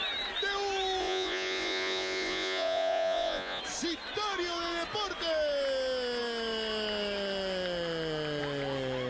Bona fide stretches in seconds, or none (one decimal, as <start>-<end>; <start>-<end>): 0.0-1.0; 3.6-9.1

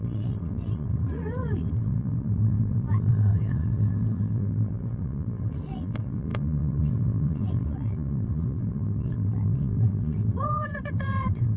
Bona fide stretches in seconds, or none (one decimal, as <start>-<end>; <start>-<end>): none

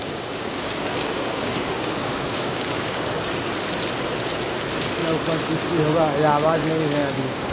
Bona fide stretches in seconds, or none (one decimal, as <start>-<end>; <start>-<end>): 3.3-7.0

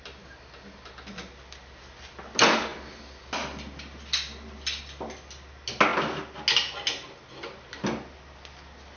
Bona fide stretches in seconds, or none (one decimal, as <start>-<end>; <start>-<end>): 0.0-9.0

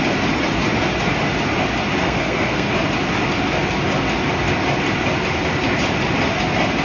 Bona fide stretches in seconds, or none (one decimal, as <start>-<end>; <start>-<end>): 0.0-2.0; 2.7-6.8

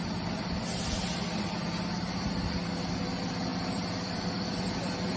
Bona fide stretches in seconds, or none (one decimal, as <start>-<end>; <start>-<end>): 0.0-5.2

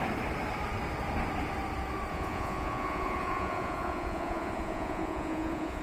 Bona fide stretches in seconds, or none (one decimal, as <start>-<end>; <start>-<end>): 0.0-2.1